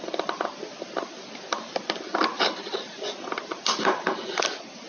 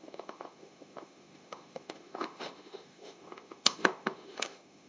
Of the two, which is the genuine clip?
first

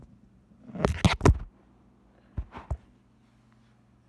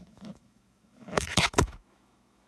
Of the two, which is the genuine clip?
first